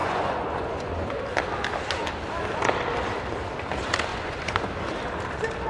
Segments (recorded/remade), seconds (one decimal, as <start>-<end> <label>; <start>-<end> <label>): 0.0-1.0 remade; 1.0-4.1 recorded; 4.1-4.7 remade; 4.7-5.7 recorded